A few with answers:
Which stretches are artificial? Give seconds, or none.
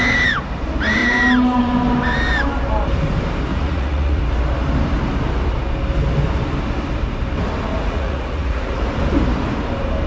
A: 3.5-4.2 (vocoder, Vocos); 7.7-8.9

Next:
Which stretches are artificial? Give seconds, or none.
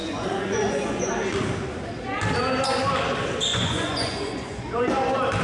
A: 0.0-1.1 (vocoder, Vocos); 3.5-4.8